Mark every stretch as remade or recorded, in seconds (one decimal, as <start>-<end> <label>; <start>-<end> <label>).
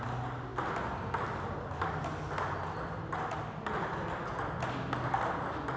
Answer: 0.0-5.8 recorded